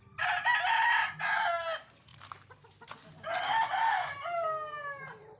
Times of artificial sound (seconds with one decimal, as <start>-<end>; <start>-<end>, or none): none